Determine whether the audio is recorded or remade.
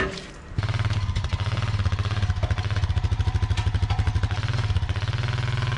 recorded